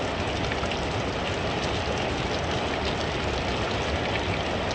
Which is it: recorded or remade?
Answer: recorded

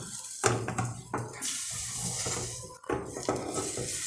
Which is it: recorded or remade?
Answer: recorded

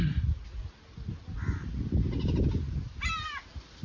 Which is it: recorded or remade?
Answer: recorded